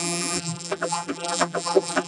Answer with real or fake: fake